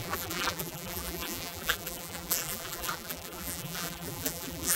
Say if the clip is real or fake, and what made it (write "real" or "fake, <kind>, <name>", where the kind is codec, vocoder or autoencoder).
fake, vocoder, BigVGAN v2